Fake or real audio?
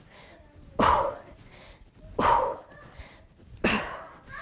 real